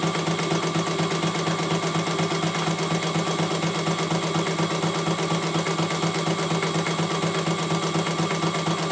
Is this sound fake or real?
real